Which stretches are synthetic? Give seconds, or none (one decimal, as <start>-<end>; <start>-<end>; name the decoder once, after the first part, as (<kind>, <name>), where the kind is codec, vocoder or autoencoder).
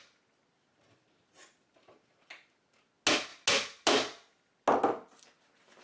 none